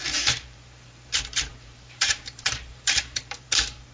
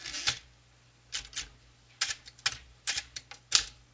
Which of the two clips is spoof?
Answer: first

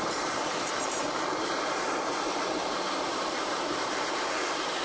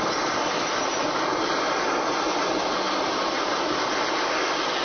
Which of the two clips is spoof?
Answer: first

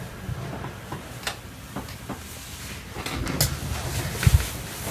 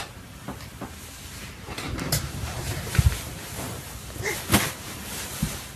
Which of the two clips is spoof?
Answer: second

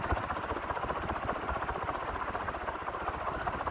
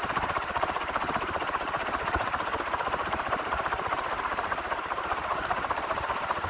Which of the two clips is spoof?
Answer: second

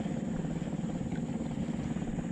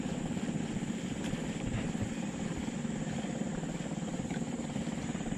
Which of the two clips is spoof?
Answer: second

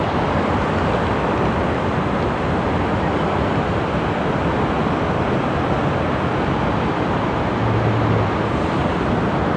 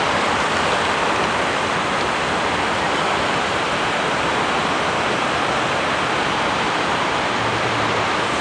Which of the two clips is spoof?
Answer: second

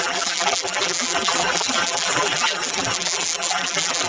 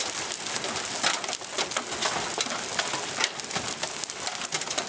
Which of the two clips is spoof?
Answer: first